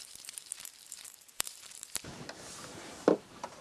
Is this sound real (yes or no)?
no